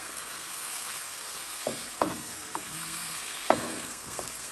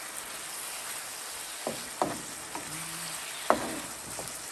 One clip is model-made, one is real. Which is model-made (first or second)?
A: first